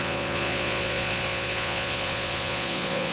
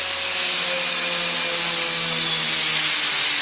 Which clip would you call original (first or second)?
second